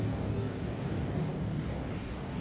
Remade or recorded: remade